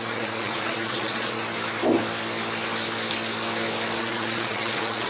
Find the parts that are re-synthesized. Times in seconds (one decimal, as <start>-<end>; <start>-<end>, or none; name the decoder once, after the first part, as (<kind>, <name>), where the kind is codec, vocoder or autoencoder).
0.0-1.4 (vocoder, Vocos); 4.0-5.1